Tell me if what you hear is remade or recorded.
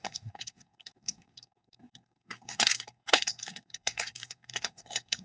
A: remade